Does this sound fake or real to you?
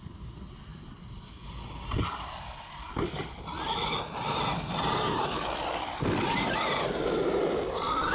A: real